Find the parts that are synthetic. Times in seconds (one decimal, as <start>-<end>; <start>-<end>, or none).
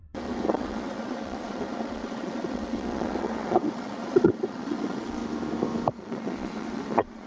0.0-5.2; 5.9-7.3